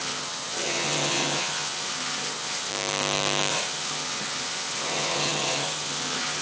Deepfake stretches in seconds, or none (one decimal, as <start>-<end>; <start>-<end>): 0.0-2.7; 3.5-6.4